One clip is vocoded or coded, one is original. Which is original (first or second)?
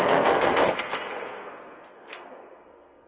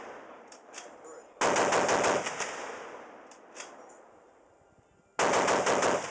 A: second